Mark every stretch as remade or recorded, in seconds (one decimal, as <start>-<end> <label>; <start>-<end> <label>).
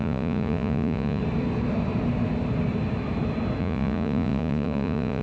0.0-1.2 remade; 1.2-3.6 recorded; 3.6-5.2 remade